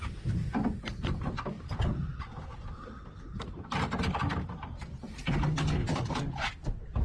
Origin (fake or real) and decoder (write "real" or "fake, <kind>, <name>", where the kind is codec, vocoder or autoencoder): real